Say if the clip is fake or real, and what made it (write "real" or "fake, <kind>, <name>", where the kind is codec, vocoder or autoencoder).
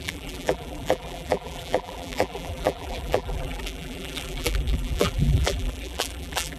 fake, vocoder, BigVGAN v2